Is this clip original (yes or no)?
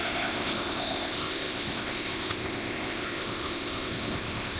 no